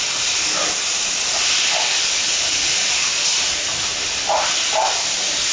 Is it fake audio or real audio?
real